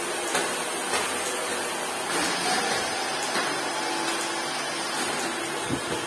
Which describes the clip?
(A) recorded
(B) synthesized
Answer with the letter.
A